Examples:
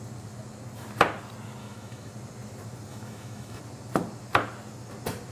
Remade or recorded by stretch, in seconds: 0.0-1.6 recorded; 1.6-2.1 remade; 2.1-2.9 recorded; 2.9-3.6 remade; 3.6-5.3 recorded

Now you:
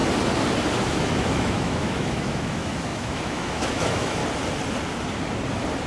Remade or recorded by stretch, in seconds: 0.0-0.8 recorded; 0.8-4.2 remade; 4.2-5.9 recorded

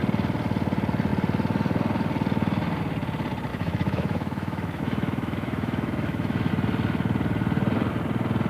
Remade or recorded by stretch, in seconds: 0.0-3.5 recorded; 3.5-6.5 remade; 6.5-8.5 recorded